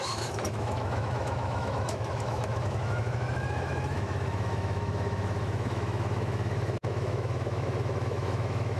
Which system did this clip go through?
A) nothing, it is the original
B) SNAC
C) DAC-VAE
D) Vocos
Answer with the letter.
C